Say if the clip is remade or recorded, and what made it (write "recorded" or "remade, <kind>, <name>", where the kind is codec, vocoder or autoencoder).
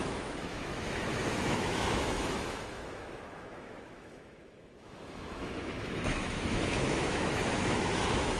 remade, autoencoder, DAC-VAE